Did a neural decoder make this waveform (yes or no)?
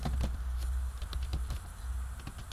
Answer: no